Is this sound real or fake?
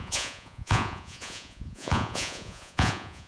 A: fake